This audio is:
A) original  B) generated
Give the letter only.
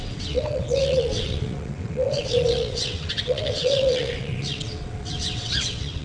B